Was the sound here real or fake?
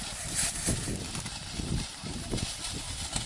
real